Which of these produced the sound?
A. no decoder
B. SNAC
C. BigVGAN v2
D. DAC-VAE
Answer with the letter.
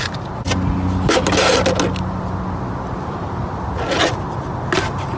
A